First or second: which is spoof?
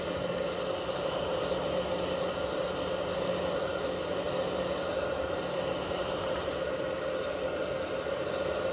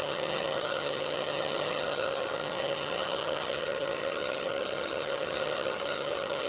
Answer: second